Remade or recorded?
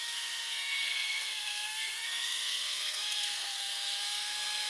remade